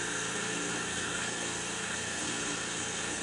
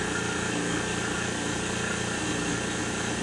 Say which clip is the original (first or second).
second